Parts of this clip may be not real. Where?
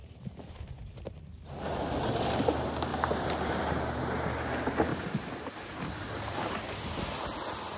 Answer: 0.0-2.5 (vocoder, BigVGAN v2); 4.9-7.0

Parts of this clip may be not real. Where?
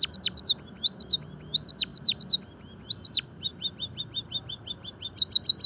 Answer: 0.0-3.5 (vocoder, BigVGAN v2); 4.0-5.7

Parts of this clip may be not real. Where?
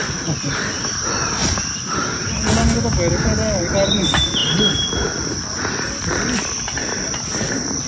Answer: none